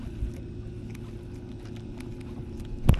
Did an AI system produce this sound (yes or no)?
no